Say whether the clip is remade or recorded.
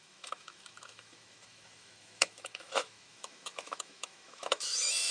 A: remade